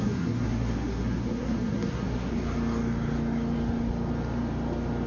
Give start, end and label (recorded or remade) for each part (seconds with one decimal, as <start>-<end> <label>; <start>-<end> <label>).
0.0-2.3 remade; 2.3-5.1 recorded